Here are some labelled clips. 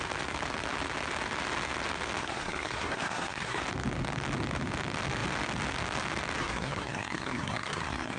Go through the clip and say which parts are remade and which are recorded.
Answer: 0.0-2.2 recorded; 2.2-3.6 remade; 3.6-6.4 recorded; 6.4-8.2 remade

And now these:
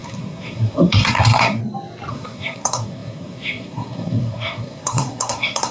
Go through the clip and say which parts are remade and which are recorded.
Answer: 0.0-1.6 remade; 1.6-2.1 recorded; 2.1-5.7 remade

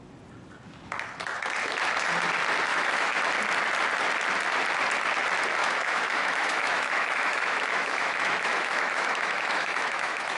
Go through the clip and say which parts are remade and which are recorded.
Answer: 0.0-2.7 recorded; 2.7-3.2 remade; 3.2-5.6 recorded; 5.6-10.4 remade

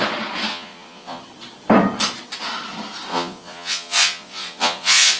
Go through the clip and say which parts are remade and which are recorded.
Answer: 0.0-0.5 recorded; 0.5-1.2 remade; 1.2-3.1 recorded; 3.1-5.2 remade

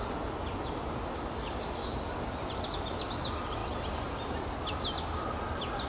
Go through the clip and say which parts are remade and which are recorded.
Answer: 0.0-5.9 recorded